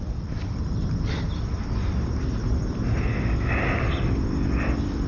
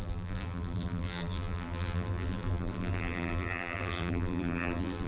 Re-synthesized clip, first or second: second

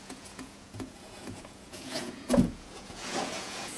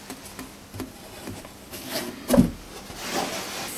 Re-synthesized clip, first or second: first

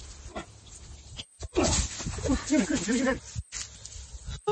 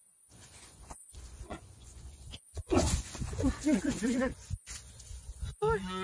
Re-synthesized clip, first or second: second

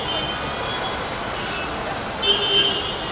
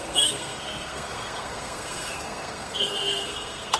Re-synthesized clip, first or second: second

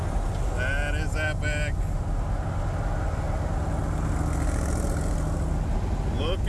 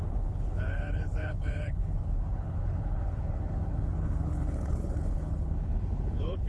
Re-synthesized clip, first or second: second